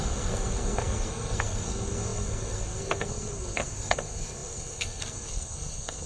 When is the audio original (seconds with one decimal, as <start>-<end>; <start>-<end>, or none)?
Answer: none